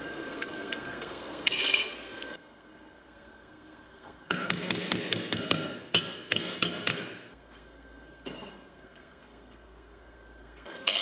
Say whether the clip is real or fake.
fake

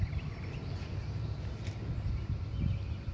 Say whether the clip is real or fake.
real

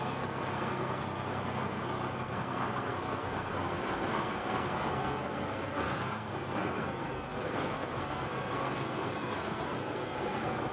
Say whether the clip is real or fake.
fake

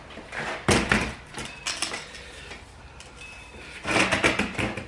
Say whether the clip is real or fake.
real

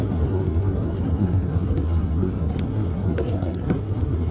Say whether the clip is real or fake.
fake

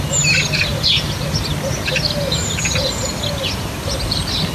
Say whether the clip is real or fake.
real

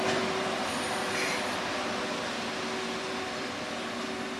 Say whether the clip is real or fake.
real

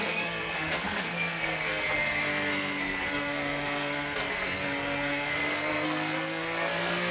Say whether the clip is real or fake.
fake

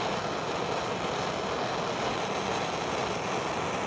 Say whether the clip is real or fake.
real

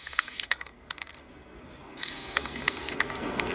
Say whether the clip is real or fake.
fake